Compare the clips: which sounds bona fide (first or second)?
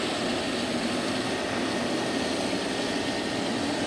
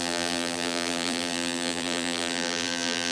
first